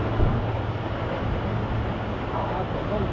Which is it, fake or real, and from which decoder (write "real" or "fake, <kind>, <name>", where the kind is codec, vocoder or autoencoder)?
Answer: real